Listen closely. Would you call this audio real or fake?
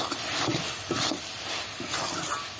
real